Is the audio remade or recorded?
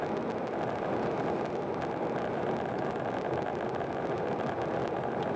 recorded